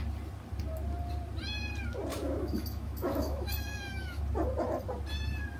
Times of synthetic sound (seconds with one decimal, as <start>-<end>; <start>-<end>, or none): 2.1-4.2